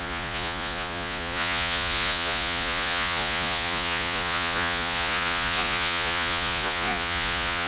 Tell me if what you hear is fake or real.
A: fake